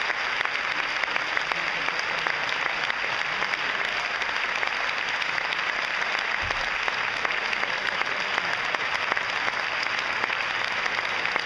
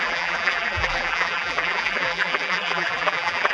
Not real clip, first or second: second